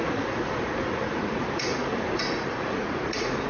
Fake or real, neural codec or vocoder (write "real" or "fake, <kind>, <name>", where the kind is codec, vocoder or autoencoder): fake, vocoder, Vocos